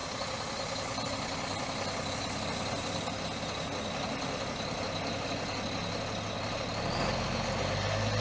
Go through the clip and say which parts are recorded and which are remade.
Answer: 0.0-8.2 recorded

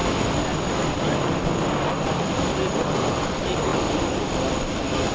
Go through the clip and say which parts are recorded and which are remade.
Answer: 0.0-5.1 recorded

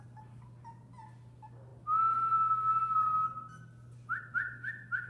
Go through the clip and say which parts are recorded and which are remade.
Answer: 0.0-5.1 recorded